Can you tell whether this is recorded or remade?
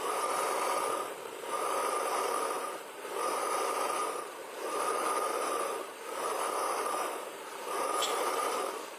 remade